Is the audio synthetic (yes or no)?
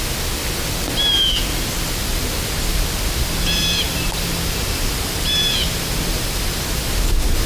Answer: no